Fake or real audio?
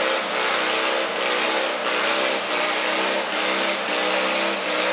real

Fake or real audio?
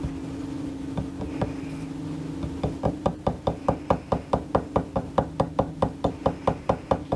real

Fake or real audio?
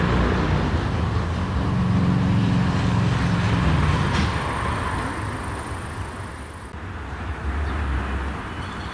real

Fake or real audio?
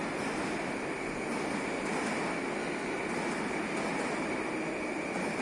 real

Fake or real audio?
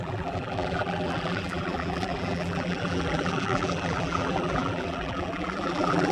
fake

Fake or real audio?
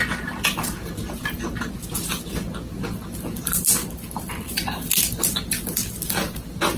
real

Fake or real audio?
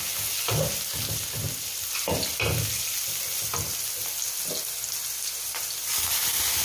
real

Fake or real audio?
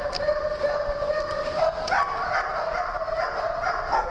real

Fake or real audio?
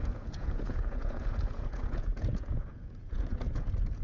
fake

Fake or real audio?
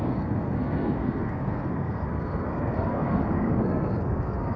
fake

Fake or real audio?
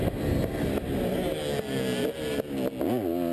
real